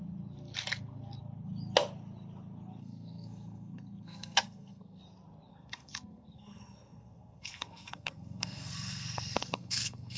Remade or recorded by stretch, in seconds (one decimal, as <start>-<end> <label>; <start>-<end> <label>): 0.0-2.8 recorded; 2.8-5.0 remade; 5.0-5.5 recorded; 5.5-10.2 remade